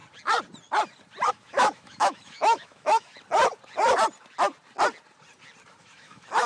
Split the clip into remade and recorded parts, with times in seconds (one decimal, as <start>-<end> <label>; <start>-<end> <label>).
0.0-1.3 recorded; 1.3-3.1 remade; 3.1-5.8 recorded; 5.8-6.5 remade